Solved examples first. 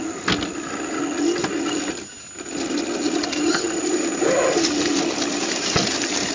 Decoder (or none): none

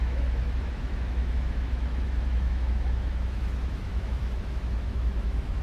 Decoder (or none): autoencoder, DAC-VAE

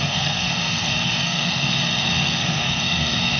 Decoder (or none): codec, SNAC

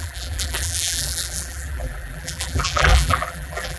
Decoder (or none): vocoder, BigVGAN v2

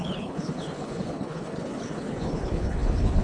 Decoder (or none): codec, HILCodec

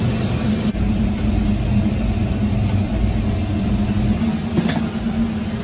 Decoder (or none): none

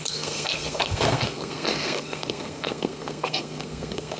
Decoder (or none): codec, SNAC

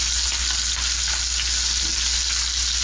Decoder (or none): none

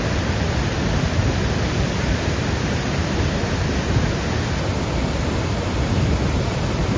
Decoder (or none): none